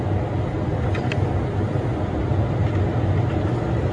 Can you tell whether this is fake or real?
real